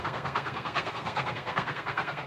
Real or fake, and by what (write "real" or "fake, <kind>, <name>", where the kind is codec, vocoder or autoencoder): fake, codec, SNAC